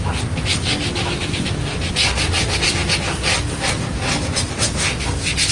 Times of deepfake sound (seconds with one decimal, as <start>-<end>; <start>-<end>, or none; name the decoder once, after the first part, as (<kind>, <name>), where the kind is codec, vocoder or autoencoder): none